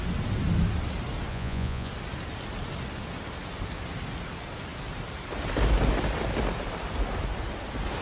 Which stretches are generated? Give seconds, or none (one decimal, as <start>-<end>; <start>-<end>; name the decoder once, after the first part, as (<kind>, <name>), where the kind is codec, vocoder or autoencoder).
1.3-1.9 (vocoder, Vocos)